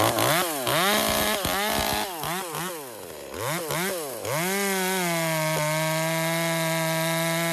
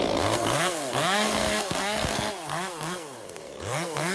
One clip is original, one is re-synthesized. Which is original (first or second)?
first